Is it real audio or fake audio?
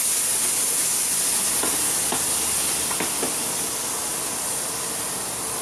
real